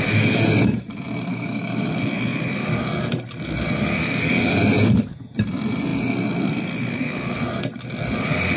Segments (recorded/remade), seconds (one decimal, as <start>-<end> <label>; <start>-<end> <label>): 0.0-1.3 recorded; 1.3-1.9 remade; 1.9-8.6 recorded